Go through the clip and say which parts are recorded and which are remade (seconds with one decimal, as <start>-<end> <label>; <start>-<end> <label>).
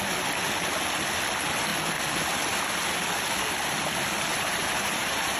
0.0-4.3 recorded; 4.3-5.4 remade